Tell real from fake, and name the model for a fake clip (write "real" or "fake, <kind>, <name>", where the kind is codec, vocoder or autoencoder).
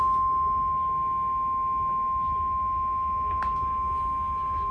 real